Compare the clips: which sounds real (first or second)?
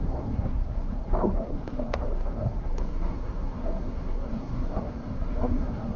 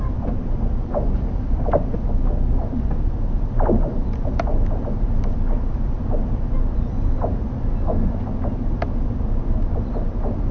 second